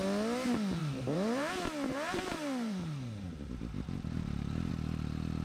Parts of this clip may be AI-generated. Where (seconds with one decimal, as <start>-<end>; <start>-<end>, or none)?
0.8-1.5; 1.9-4.7